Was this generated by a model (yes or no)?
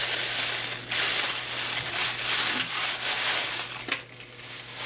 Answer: no